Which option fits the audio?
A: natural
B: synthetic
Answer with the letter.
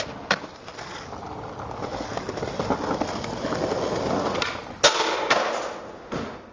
A